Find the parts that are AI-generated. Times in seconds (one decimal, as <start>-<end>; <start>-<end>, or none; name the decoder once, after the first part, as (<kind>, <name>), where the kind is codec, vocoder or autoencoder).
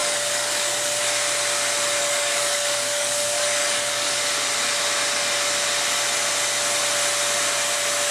0.0-1.0 (codec, DAC); 2.0-4.2